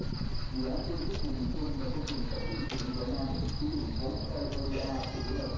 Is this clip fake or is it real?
real